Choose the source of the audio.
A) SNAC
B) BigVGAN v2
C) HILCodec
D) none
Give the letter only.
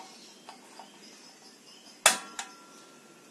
D